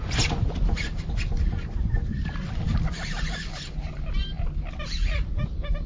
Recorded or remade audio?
recorded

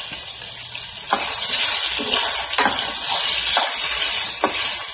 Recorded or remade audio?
recorded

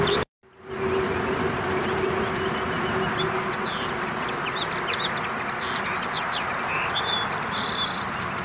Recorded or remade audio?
recorded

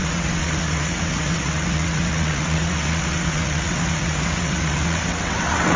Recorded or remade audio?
remade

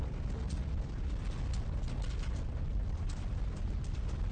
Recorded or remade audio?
recorded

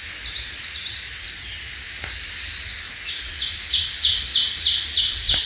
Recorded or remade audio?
recorded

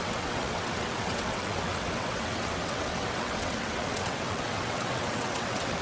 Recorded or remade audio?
remade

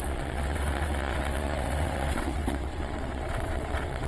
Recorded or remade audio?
remade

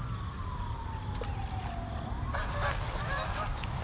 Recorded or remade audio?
recorded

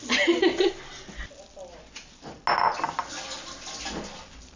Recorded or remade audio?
recorded